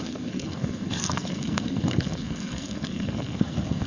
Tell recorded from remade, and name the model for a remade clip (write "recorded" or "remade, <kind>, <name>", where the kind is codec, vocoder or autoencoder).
remade, codec, SNAC